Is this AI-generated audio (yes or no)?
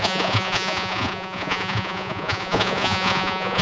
yes